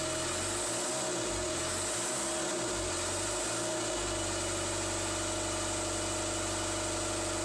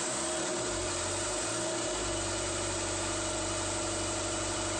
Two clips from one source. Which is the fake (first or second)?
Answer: second